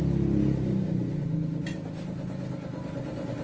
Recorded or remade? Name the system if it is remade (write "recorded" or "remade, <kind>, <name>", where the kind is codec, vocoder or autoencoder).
recorded